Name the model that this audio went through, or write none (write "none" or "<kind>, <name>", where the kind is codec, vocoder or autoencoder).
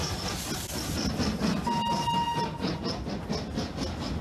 none